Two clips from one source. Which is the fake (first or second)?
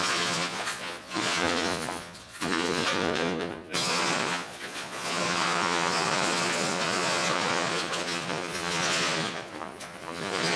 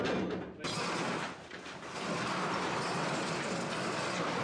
first